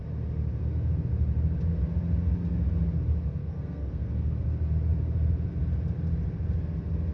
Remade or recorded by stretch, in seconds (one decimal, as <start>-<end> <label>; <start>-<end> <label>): 0.0-3.4 recorded; 3.4-4.3 remade; 4.3-7.1 recorded

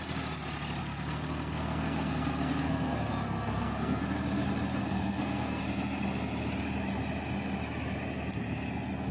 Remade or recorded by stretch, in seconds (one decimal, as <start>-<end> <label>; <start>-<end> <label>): 0.0-0.8 recorded; 0.8-4.0 remade; 4.0-4.8 recorded; 4.8-5.6 remade; 5.6-9.1 recorded